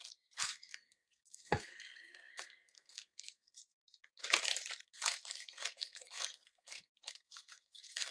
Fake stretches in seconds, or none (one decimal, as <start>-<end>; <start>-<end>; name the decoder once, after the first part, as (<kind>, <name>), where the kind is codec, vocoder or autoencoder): 0.0-4.2 (codec, SNAC); 4.8-8.1